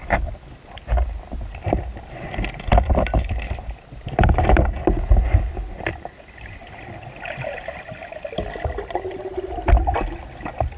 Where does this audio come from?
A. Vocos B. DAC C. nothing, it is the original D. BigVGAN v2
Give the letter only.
C